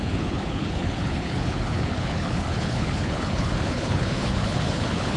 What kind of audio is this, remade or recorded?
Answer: remade